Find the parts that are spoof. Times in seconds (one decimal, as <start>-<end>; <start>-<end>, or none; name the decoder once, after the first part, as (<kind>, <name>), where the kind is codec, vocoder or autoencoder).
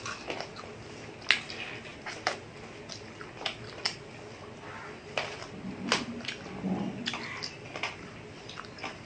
none